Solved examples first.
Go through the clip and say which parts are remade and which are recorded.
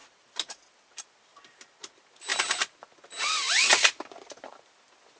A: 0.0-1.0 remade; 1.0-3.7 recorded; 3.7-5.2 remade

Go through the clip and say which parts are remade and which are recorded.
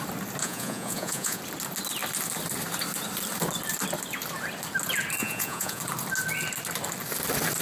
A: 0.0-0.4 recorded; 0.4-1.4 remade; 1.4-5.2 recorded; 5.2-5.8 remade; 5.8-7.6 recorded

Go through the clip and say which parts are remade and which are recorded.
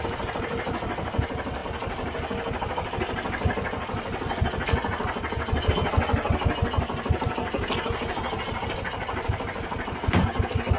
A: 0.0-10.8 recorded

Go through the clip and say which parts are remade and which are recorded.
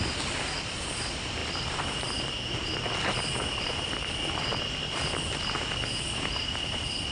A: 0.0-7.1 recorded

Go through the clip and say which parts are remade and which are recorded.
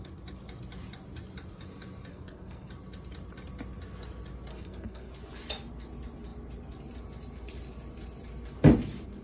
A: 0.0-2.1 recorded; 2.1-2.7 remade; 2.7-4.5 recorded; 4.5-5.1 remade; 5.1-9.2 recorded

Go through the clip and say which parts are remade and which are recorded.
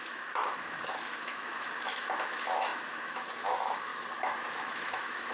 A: 0.0-3.9 remade; 3.9-4.5 recorded; 4.5-5.3 remade